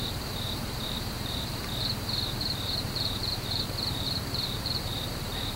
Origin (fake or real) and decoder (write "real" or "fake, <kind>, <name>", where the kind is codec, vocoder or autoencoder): fake, vocoder, BigVGAN v2